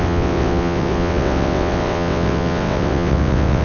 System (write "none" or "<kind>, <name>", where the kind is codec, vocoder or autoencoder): vocoder, WaveNeXt